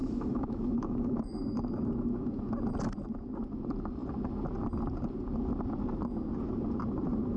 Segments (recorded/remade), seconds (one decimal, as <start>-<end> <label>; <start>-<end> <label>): 0.0-2.4 remade; 2.4-7.4 recorded